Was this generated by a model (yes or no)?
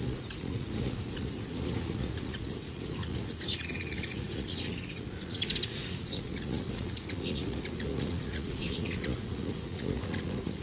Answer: yes